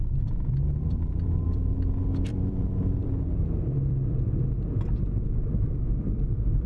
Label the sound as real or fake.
fake